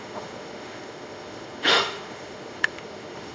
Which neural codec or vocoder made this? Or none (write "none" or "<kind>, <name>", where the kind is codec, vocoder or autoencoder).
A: autoencoder, DAC-VAE